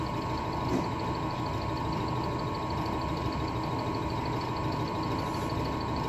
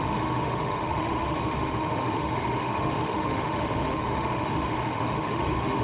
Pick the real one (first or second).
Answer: first